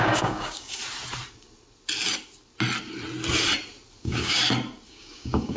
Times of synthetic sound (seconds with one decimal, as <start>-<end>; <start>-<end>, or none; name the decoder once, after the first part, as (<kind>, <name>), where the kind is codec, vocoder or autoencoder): 0.0-0.8 (codec, DAC); 4.0-4.4; 4.9-5.6